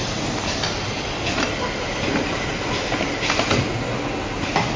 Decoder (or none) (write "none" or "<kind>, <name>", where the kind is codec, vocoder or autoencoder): none